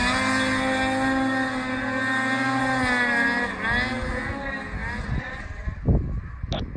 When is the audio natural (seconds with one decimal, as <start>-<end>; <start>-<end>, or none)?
0.0-6.8